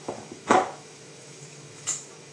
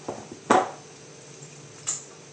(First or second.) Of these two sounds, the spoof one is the first